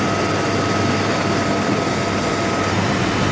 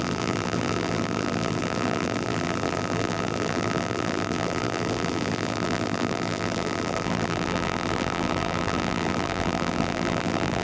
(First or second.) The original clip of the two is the first